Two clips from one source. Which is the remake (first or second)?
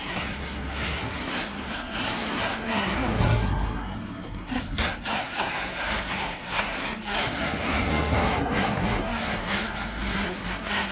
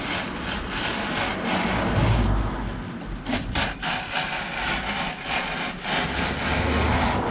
first